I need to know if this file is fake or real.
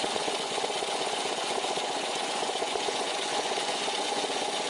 fake